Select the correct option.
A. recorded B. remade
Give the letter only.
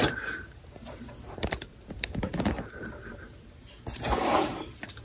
B